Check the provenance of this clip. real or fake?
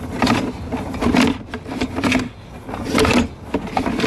real